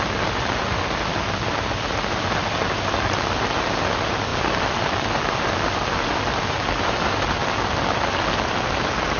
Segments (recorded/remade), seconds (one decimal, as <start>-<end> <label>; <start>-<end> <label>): 0.0-9.2 recorded